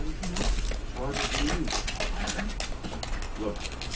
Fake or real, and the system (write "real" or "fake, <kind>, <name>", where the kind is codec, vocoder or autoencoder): real